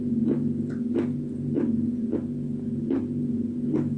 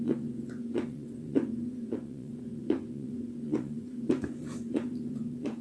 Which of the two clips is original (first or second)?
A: first